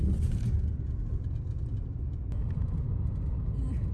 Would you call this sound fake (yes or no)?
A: no